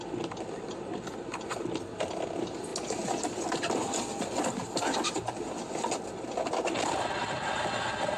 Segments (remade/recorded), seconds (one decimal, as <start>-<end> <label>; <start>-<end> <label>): 0.0-8.2 recorded